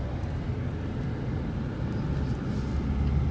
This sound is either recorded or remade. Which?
recorded